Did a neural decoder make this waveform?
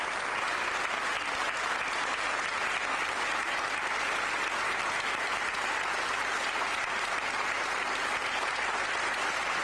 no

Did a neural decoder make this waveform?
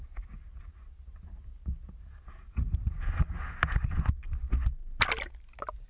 no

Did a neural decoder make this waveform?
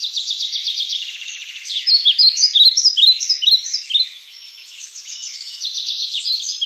yes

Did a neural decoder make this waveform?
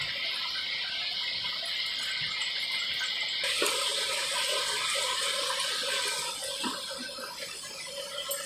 no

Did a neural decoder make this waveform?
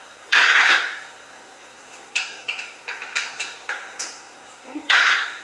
yes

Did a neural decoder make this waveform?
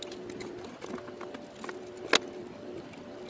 no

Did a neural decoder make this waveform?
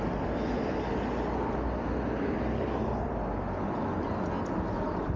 no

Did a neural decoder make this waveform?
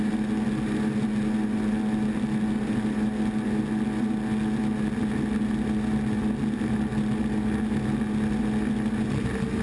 no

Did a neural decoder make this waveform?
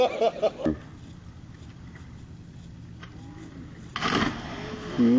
no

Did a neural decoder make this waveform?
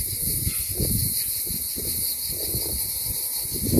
no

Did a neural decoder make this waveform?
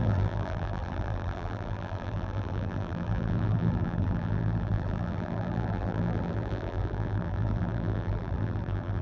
yes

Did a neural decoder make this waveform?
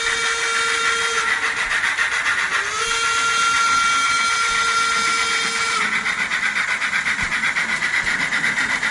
no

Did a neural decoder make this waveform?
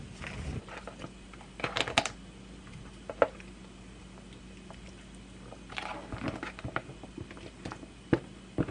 no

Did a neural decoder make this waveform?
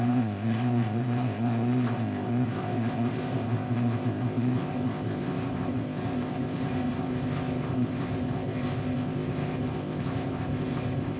yes